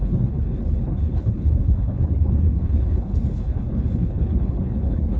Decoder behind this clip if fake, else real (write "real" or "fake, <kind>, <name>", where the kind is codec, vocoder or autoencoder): fake, codec, HILCodec